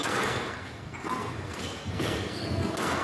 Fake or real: fake